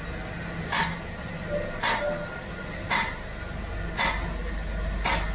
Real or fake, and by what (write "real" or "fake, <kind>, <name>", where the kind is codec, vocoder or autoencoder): real